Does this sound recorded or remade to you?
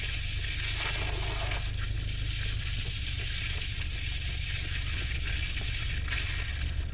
recorded